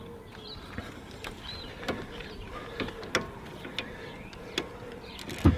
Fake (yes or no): no